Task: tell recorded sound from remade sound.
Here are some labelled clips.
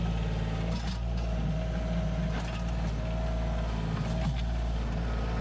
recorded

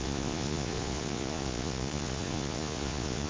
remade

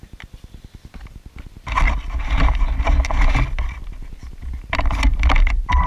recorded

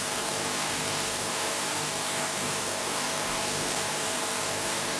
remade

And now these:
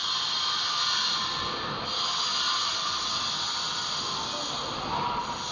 recorded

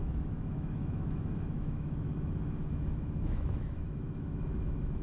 remade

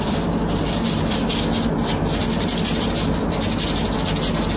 recorded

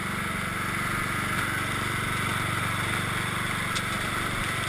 recorded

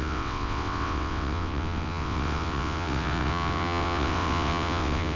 remade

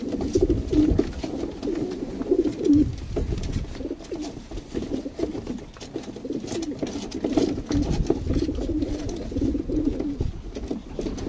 recorded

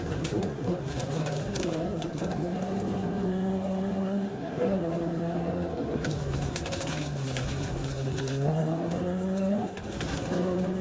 remade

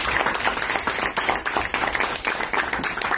remade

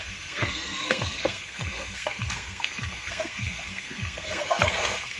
remade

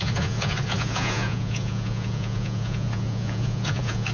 remade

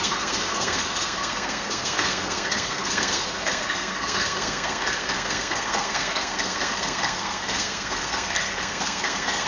remade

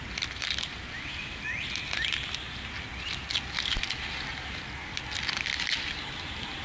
recorded